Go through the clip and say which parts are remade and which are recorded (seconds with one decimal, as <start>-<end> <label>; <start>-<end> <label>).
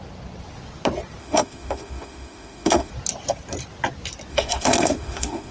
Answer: 0.0-1.2 recorded; 1.2-2.9 remade; 2.9-4.3 recorded; 4.3-5.5 remade